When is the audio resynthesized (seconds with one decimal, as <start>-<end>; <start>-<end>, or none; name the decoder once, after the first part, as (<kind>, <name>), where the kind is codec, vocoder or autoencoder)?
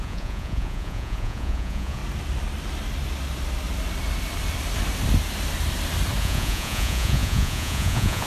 0.0-2.0 (vocoder, Vocos); 6.2-8.3